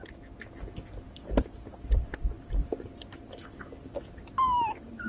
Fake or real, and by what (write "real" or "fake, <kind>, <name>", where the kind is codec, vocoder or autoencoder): real